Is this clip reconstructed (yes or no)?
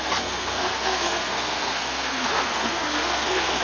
yes